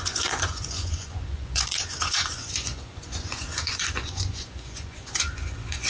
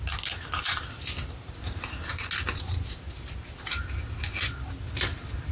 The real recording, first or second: second